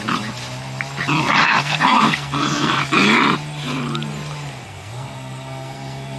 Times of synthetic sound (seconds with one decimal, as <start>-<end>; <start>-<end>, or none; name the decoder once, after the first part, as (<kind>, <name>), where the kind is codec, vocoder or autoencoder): 1.4-2.8 (codec, SNAC); 4.6-6.2